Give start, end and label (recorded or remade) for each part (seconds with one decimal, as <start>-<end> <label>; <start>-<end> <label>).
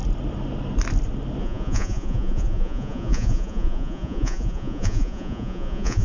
0.0-1.4 recorded; 1.4-6.0 remade